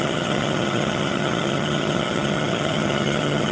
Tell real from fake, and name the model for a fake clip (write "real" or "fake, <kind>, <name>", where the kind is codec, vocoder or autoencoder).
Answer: fake, vocoder, HiFi-GAN